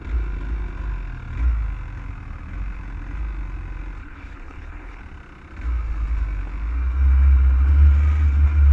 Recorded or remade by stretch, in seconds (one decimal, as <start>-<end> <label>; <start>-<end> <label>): 0.0-4.0 recorded; 4.0-5.0 remade; 5.0-8.7 recorded